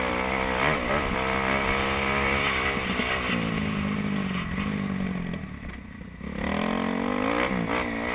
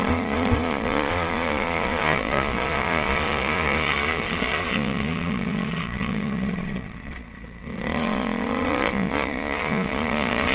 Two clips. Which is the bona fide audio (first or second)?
first